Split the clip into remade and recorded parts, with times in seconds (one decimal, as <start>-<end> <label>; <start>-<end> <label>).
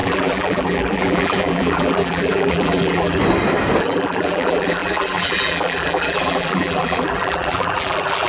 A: 0.0-3.2 remade; 3.2-3.8 recorded; 3.8-8.3 remade